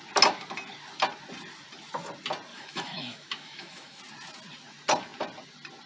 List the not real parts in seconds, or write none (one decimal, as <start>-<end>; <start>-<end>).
2.5-4.0